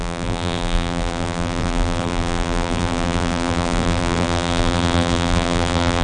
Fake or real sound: fake